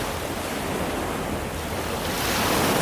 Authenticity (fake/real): real